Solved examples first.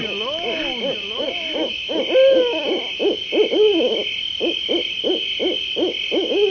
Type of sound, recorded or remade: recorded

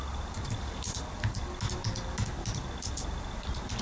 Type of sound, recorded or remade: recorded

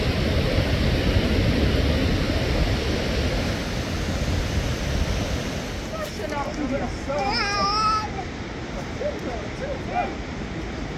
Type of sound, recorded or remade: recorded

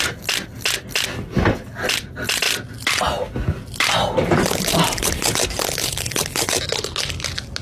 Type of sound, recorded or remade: recorded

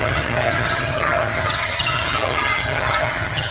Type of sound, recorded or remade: remade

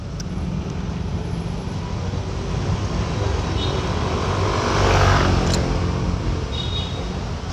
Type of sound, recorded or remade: recorded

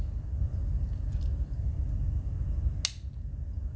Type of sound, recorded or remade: recorded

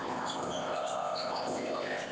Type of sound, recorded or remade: remade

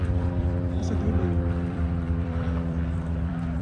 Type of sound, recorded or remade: remade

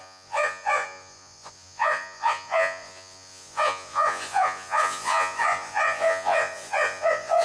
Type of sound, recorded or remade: remade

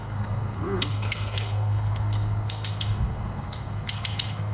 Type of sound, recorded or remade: remade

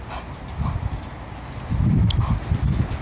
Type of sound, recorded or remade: recorded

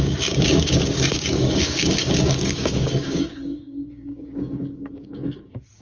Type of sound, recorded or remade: remade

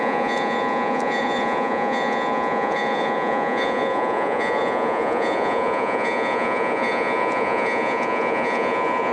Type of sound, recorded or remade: remade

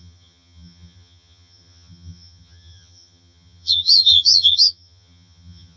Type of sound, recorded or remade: remade